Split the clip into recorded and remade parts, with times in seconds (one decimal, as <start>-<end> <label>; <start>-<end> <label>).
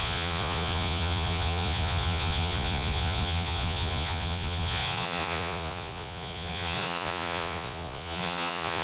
0.0-8.8 remade